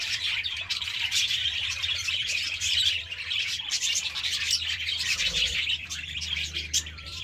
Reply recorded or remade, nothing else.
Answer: remade